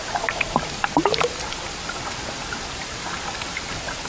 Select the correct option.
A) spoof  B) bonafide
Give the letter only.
B